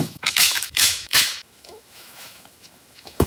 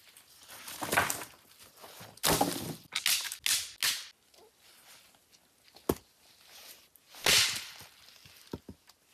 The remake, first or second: first